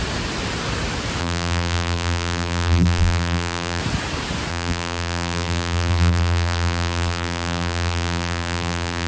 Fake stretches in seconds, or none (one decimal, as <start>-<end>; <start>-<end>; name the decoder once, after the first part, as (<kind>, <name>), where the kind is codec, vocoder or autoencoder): 1.2-3.8 (vocoder, BigVGAN v2); 4.5-9.1